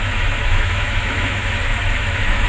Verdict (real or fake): fake